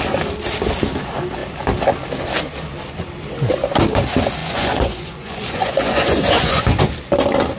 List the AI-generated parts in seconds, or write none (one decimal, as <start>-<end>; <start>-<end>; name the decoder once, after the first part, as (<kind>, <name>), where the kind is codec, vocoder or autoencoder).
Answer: 4.4-6.8 (vocoder, Vocos)